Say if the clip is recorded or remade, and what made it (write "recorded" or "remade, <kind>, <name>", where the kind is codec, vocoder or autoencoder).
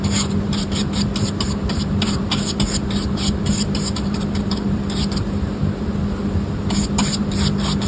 recorded